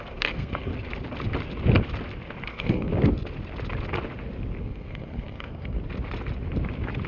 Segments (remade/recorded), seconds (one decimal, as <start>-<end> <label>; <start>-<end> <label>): 0.0-0.7 remade; 0.7-2.5 recorded; 2.5-2.9 remade; 2.9-4.6 recorded; 4.6-5.8 remade; 5.8-7.1 recorded